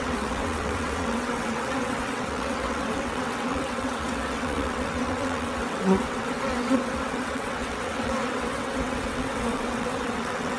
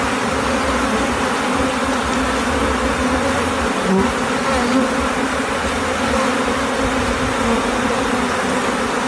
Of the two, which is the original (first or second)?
second